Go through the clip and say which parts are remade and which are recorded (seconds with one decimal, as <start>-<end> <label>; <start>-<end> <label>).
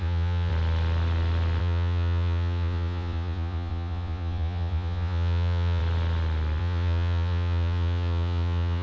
0.0-0.5 remade; 0.5-1.6 recorded; 1.6-5.8 remade; 5.8-6.6 recorded; 6.6-8.8 remade